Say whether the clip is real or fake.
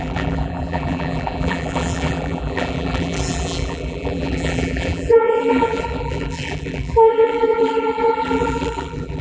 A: fake